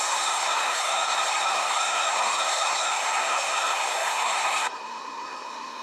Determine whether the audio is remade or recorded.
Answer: remade